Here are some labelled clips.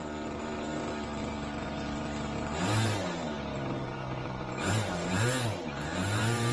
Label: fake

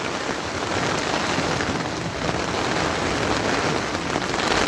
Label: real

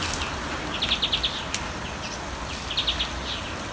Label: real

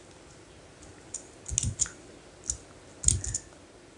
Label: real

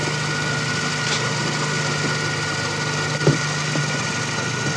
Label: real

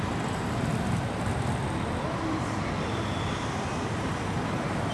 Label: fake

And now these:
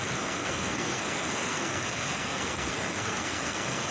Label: fake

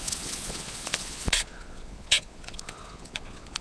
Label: fake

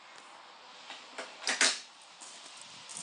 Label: real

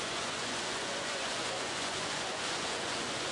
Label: fake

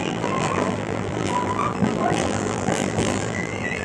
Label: fake